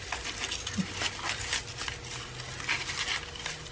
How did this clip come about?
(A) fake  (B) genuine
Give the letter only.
B